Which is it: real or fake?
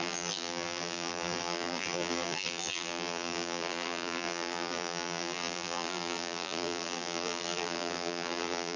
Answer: fake